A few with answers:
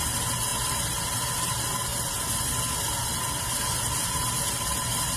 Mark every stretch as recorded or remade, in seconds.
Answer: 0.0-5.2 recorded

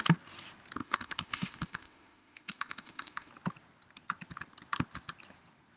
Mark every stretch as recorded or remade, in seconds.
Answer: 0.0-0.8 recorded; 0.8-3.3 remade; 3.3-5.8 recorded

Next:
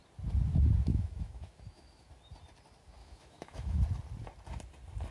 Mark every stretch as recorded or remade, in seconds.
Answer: 0.0-0.9 recorded; 0.9-2.1 remade; 2.1-3.0 recorded; 3.0-3.8 remade; 3.8-5.1 recorded

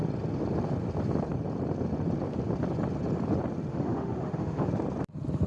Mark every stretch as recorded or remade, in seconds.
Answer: 0.0-3.7 recorded; 3.7-4.7 remade; 4.7-5.5 recorded

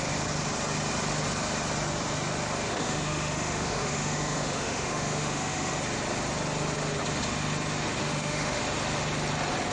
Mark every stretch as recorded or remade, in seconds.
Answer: 0.0-2.7 recorded; 2.7-5.8 remade; 5.8-8.0 recorded; 8.0-8.6 remade; 8.6-9.7 recorded

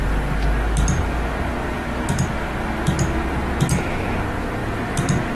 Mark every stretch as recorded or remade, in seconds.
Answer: 0.0-5.3 recorded

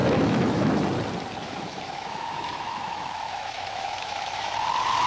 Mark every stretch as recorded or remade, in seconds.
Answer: 0.0-0.8 remade; 0.8-1.4 recorded; 1.4-4.5 remade; 4.5-5.1 recorded